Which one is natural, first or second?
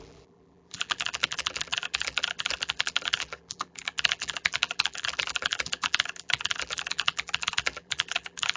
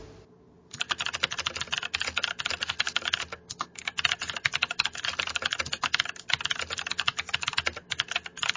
second